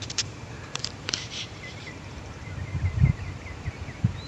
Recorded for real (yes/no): no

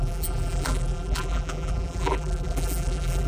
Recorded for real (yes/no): no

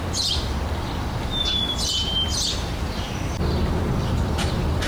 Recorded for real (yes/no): yes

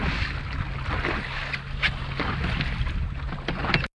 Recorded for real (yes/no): yes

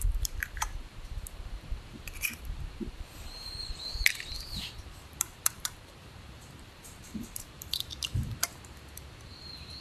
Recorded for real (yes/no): no